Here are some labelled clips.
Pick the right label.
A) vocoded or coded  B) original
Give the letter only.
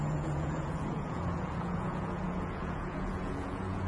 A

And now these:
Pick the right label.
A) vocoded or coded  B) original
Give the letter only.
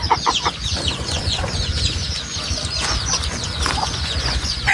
A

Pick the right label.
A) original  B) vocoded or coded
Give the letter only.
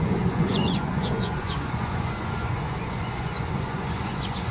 B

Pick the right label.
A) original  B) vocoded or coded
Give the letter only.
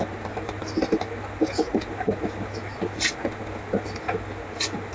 A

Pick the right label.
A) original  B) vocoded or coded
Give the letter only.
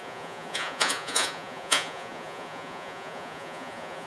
B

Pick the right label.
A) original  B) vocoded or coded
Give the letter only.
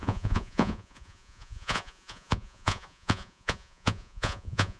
B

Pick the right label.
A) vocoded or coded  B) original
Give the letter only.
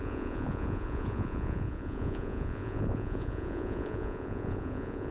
A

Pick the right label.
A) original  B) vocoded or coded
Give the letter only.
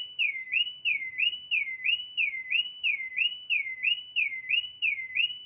A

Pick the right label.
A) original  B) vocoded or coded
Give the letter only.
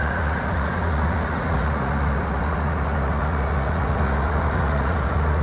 B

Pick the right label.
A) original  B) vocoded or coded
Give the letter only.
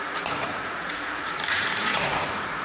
B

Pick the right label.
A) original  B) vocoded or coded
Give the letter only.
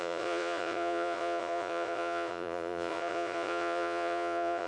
B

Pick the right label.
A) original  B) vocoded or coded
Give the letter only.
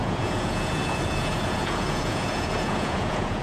B